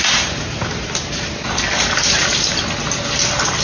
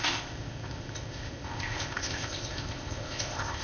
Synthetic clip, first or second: second